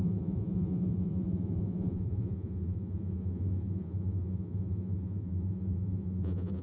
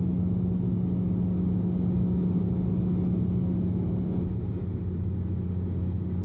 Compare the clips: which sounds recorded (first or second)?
second